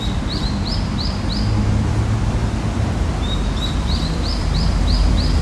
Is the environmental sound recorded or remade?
remade